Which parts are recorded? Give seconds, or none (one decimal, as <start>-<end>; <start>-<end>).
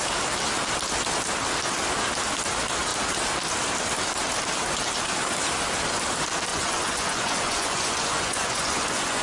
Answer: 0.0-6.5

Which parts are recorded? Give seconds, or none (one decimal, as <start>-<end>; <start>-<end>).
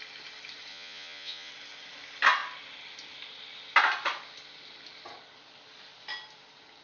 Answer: 0.0-0.7; 1.5-6.8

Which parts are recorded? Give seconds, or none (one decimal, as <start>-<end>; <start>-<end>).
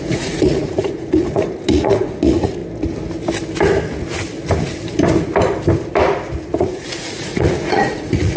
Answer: 2.6-6.6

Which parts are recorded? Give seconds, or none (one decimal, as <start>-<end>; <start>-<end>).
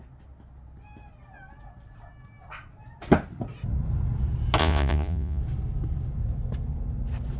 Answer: 0.0-4.6; 5.4-7.4